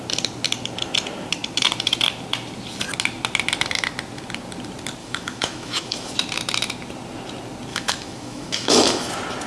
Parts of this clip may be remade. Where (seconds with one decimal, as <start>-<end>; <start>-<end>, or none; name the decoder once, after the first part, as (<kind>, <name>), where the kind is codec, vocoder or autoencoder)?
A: 5.0-6.1 (autoencoder, DAC-VAE); 7.7-9.1